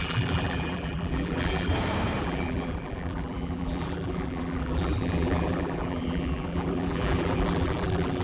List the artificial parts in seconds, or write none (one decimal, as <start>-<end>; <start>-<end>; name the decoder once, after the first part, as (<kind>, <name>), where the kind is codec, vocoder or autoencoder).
0.0-1.7 (vocoder, BigVGAN v2); 2.2-8.2